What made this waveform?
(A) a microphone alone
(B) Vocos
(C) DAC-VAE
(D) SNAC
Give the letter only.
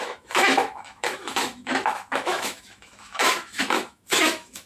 C